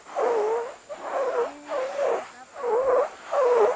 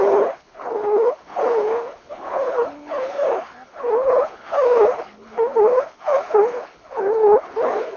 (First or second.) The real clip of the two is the first